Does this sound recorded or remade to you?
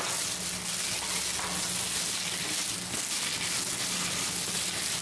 recorded